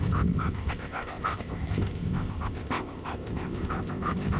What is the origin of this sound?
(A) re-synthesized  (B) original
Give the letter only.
A